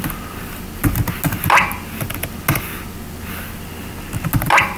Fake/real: real